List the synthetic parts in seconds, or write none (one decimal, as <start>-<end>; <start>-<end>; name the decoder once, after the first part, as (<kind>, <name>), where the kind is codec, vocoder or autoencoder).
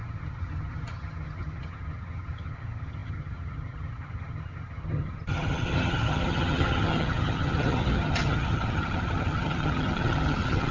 0.0-10.7 (vocoder, HiFi-GAN)